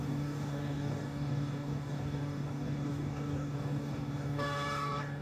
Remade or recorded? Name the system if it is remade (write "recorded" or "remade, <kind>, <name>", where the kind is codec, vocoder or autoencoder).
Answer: remade, codec, DAC